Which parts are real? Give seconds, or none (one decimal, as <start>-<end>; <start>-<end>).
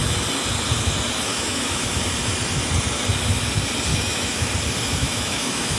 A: 0.0-1.3; 2.0-3.9; 4.5-5.0